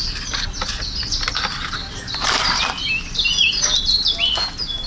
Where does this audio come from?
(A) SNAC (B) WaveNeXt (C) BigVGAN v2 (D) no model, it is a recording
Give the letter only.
D